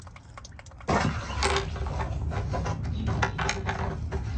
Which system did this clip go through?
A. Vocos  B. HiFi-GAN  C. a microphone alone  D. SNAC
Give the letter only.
C